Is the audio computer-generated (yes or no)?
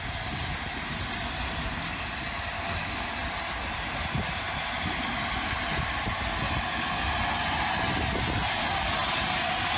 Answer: no